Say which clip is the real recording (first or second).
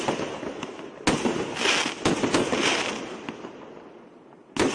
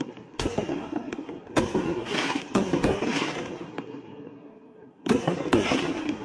first